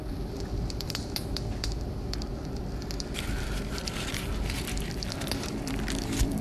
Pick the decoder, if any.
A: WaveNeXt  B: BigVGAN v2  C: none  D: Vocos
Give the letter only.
B